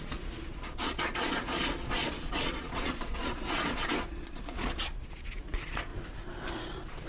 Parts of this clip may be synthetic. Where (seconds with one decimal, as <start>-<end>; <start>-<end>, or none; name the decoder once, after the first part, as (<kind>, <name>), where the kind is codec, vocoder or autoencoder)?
0.0-5.9 (vocoder, Vocos); 6.5-7.1